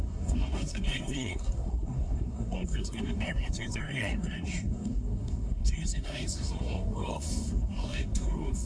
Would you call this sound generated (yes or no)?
yes